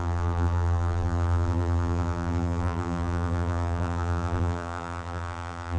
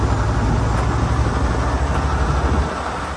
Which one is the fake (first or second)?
first